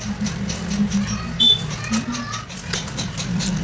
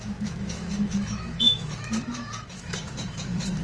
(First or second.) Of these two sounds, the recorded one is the first